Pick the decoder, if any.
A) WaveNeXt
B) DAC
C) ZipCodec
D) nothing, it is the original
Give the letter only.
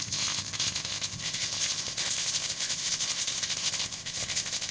C